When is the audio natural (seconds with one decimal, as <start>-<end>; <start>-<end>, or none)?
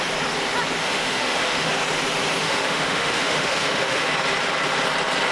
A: 0.0-0.8; 1.7-2.4; 4.1-5.3